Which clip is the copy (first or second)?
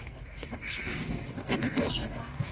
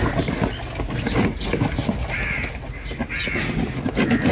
first